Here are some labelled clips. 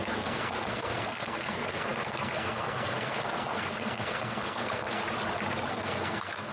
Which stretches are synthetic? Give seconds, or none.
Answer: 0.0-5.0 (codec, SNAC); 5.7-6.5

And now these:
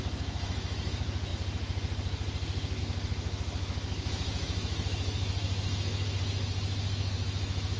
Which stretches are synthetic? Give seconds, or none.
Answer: 0.0-1.3 (autoencoder, DAC-VAE); 2.8-7.8

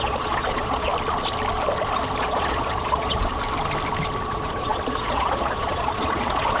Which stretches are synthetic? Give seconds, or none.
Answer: 0.0-0.9 (vocoder, Vocos); 2.2-3.3; 4.3-6.6

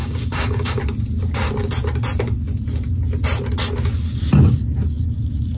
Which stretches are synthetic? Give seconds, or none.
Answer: 0.0-0.8 (codec, DAC)